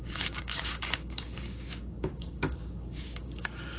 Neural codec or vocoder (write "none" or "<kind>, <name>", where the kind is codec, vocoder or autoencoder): codec, DAC